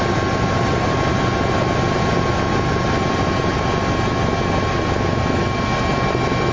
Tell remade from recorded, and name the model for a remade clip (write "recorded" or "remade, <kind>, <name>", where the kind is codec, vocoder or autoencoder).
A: recorded